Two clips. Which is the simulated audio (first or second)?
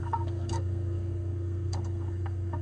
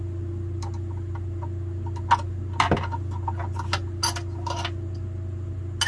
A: first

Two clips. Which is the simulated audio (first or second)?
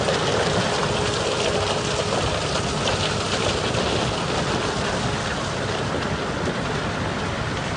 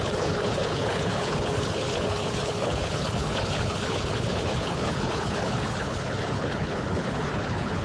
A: second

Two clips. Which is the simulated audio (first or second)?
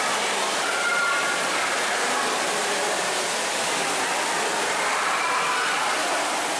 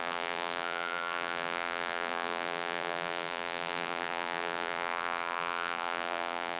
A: second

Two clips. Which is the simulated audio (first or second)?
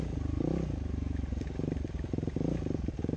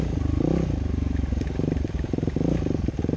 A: second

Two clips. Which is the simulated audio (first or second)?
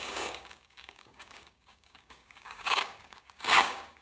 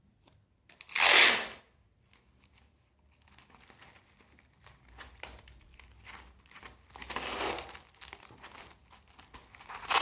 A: first